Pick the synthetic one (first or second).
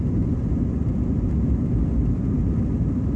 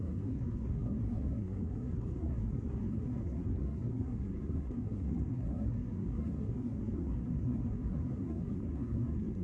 second